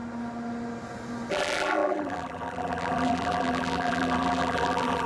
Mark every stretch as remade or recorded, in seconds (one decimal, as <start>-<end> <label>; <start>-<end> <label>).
0.0-1.3 recorded; 1.3-5.1 remade